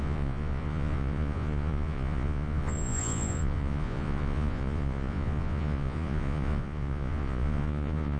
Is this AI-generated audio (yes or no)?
yes